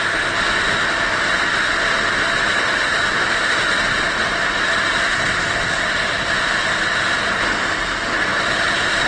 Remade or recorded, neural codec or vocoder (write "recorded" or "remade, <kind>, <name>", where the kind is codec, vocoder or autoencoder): recorded